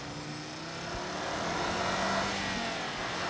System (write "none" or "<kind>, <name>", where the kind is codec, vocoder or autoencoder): none